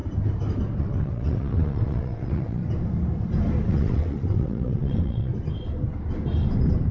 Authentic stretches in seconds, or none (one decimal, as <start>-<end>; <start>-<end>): 0.0-0.8; 2.6-3.7; 5.3-6.9